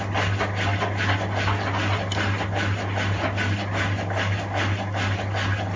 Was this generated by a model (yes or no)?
no